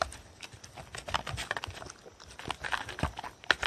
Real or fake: real